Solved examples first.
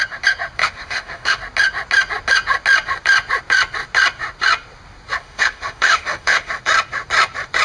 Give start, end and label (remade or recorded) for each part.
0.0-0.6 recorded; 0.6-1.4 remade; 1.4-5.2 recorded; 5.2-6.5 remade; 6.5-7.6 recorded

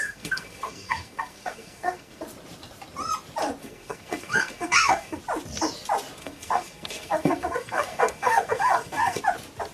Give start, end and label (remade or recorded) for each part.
0.0-2.2 remade; 2.2-3.6 recorded; 3.6-5.2 remade; 5.2-6.2 recorded; 6.2-9.2 remade; 9.2-9.7 recorded

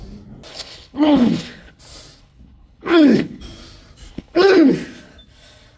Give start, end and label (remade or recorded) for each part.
0.0-0.5 recorded; 0.5-1.8 remade; 1.8-2.2 recorded; 2.2-3.4 remade; 3.4-4.1 recorded; 4.1-4.7 remade; 4.7-5.8 recorded

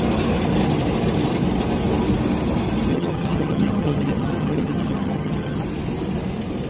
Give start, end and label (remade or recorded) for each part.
0.0-2.9 recorded; 2.9-5.6 remade; 5.6-6.7 recorded

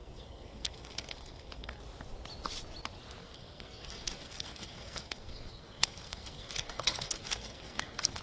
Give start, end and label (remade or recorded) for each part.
0.0-1.8 remade; 1.8-3.2 recorded; 3.2-8.2 remade

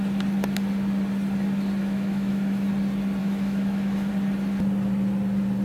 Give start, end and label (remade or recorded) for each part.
0.0-1.8 recorded; 1.8-2.7 remade; 2.7-3.2 recorded; 3.2-4.1 remade; 4.1-5.6 recorded

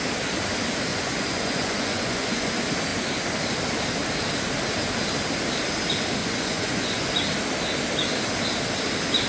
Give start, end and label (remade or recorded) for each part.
0.0-0.9 recorded; 0.9-2.5 remade; 2.5-6.2 recorded; 6.2-7.1 remade; 7.1-9.3 recorded